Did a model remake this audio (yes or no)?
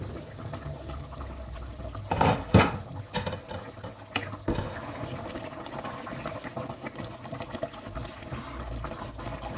no